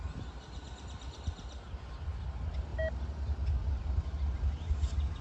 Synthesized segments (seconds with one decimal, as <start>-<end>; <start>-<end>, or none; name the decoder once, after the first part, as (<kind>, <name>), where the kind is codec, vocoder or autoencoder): none